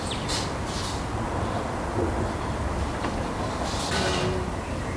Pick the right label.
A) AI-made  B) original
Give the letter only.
A